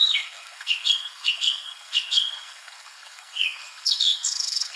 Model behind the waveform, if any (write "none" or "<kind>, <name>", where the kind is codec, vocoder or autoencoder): codec, SNAC